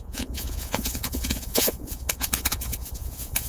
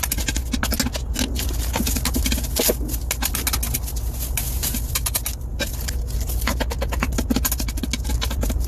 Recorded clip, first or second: second